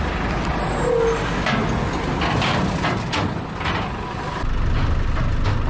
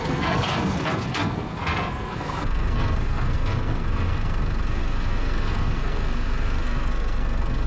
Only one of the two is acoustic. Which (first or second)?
first